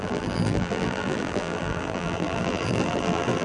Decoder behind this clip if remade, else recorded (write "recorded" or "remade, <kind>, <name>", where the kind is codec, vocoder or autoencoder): remade, vocoder, BigVGAN v2